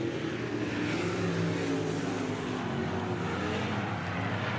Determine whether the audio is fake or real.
real